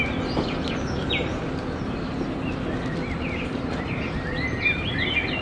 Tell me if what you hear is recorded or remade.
recorded